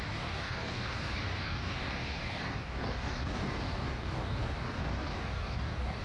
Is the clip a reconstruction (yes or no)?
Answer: yes